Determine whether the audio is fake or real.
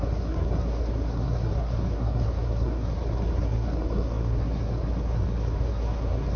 fake